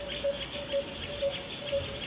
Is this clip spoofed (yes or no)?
no